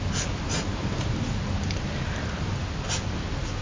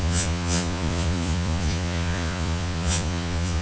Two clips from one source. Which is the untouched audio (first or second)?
first